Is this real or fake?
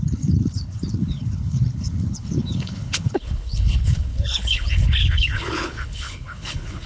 fake